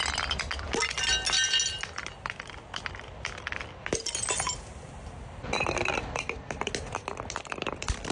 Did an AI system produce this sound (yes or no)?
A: no